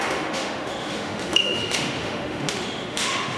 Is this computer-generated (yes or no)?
yes